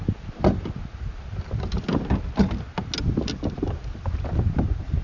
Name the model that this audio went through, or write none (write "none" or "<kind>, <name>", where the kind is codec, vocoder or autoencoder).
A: none